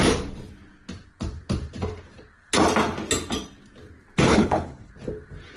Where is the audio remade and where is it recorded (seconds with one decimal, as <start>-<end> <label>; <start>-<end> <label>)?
0.0-4.3 recorded; 4.3-4.9 remade; 4.9-5.6 recorded